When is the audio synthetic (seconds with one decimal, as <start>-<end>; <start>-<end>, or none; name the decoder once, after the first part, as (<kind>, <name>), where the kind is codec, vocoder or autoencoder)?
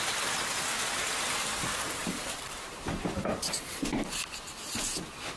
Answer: 2.0-4.2 (vocoder, BigVGAN v2)